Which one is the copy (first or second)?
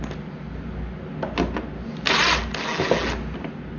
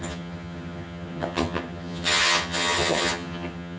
second